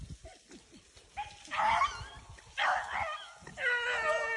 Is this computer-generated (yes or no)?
no